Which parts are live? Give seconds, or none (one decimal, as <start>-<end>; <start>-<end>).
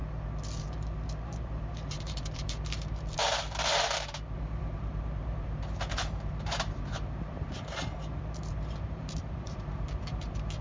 0.0-0.6